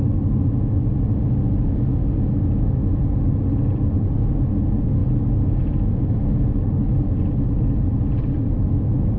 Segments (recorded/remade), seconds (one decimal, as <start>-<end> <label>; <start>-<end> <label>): 0.0-9.2 recorded